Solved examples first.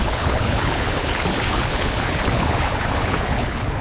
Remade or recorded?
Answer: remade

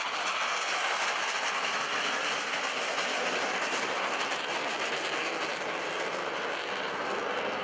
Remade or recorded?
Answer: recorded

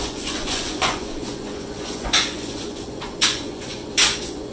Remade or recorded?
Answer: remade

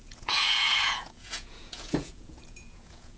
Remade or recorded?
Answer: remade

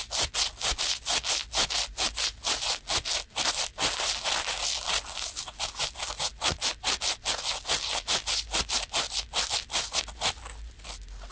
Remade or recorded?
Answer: recorded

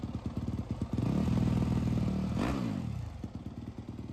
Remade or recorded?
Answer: recorded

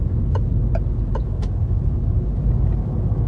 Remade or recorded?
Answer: recorded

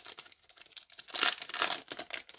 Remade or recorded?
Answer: recorded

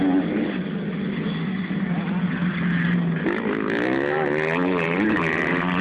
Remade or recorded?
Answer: recorded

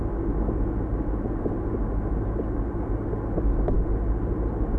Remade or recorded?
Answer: recorded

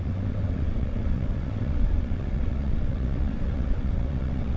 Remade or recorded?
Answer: remade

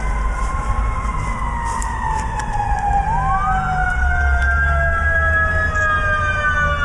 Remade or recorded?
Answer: recorded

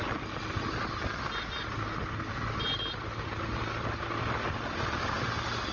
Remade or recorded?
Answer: recorded